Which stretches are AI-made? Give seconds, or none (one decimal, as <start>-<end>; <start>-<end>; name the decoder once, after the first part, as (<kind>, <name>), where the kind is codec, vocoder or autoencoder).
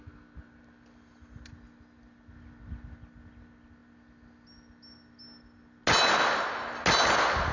none